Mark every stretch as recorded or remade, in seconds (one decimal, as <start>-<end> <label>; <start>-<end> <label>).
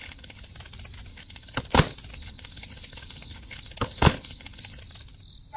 0.0-0.5 remade; 0.5-1.1 recorded; 1.1-1.6 remade; 1.6-2.1 recorded; 2.1-4.8 remade; 4.8-5.6 recorded